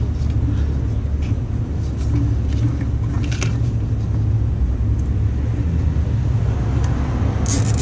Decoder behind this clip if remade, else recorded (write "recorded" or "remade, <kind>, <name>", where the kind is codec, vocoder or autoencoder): recorded